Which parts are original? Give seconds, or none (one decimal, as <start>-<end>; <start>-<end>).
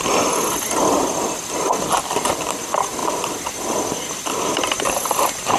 0.0-5.6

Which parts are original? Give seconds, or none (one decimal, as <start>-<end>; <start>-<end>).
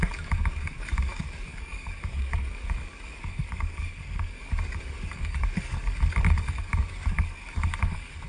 none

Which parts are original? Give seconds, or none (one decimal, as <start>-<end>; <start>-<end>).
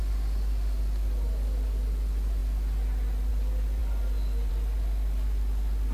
0.0-5.9